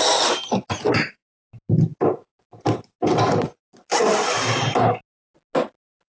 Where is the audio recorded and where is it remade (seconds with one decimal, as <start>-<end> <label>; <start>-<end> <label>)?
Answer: 0.0-6.1 recorded